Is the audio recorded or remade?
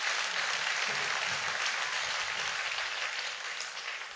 recorded